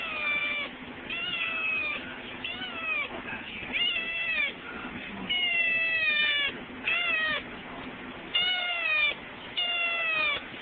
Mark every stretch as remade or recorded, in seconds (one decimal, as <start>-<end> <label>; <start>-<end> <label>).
0.0-10.6 recorded

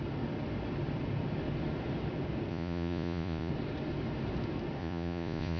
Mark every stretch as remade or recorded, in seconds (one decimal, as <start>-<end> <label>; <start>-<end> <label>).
0.0-2.5 recorded; 2.5-3.5 remade; 3.5-4.8 recorded; 4.8-5.6 remade

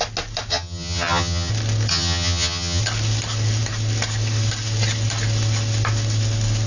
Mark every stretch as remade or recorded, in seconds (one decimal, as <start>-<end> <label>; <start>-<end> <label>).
0.0-0.5 recorded; 0.5-1.5 remade; 1.5-1.9 recorded; 1.9-2.8 remade; 2.8-6.7 recorded

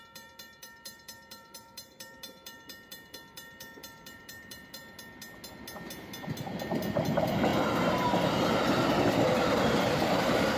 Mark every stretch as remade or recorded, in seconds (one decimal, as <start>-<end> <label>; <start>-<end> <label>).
0.0-4.8 remade; 4.8-7.1 recorded; 7.1-7.5 remade; 7.5-9.9 recorded; 9.9-10.6 remade

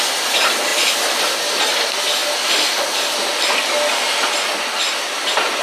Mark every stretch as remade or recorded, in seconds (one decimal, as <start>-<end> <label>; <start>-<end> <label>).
0.0-5.6 recorded